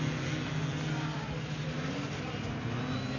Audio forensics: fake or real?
real